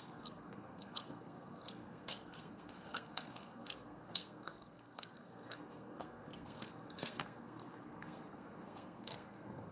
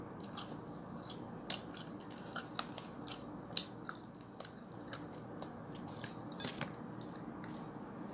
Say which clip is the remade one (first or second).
first